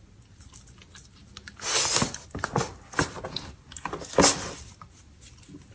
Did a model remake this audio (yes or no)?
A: no